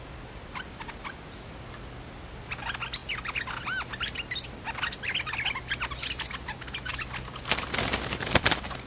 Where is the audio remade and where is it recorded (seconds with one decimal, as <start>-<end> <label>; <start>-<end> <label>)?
0.0-6.9 recorded; 6.9-8.1 remade; 8.1-8.9 recorded